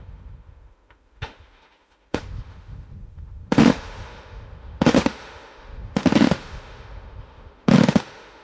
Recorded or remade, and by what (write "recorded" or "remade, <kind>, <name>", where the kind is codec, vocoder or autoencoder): remade, autoencoder, DAC-VAE